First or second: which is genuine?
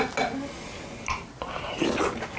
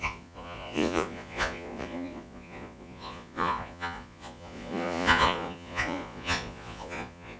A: first